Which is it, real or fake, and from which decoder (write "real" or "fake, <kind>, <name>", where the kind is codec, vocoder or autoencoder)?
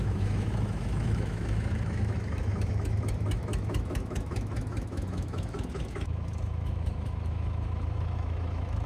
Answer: fake, autoencoder, DAC-VAE